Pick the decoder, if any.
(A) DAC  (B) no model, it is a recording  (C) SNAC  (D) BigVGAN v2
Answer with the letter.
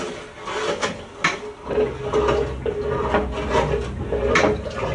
B